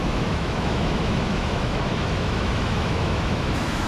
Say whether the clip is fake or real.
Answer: fake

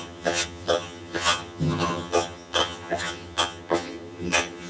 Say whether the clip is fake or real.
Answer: fake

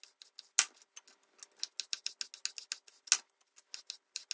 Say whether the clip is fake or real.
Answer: real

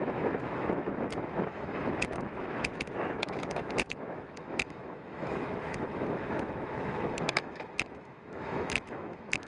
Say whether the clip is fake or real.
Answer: fake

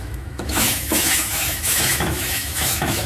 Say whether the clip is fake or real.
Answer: fake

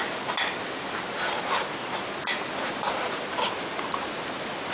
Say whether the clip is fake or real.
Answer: real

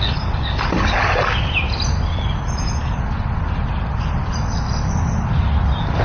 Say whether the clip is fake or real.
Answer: real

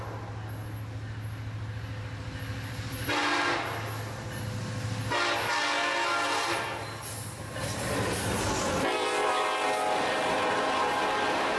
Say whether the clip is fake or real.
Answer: real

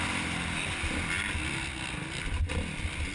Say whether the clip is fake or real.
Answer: real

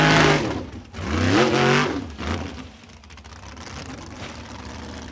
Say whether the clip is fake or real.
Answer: real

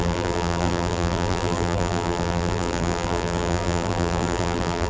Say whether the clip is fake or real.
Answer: fake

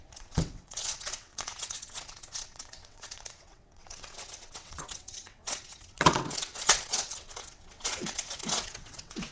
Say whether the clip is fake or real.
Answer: fake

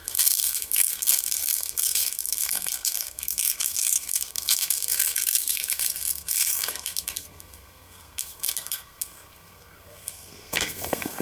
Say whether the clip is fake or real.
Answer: fake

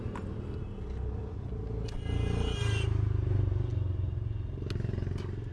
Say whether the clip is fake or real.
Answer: real